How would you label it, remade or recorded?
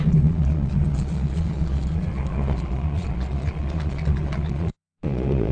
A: remade